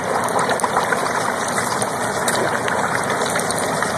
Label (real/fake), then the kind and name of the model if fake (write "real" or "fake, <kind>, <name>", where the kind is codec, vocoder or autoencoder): real